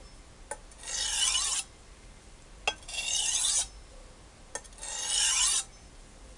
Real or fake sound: real